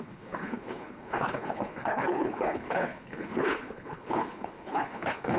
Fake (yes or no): yes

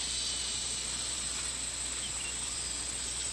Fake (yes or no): no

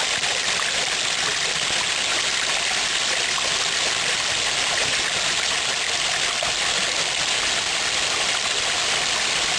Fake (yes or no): no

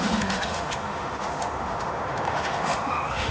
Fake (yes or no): yes